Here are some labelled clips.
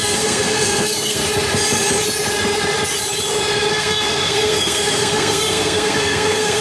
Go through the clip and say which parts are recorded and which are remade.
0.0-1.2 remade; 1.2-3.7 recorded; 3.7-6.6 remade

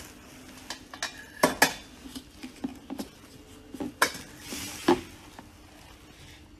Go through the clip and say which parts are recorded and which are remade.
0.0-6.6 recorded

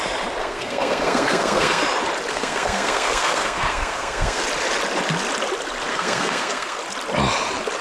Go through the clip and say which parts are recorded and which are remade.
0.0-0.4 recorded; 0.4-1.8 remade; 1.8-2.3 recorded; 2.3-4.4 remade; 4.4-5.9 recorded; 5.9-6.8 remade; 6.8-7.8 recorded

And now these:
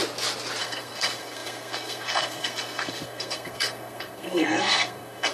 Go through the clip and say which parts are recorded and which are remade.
0.0-0.6 recorded; 0.6-5.3 remade

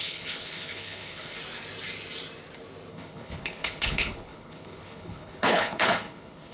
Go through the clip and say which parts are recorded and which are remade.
0.0-1.4 remade; 1.4-2.9 recorded; 2.9-6.5 remade